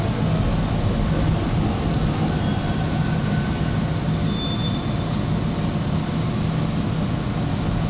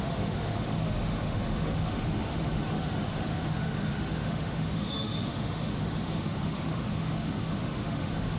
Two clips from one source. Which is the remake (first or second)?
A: second